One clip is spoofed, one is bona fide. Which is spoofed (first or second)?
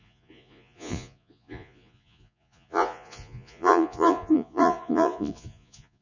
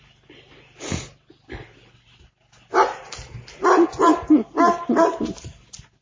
first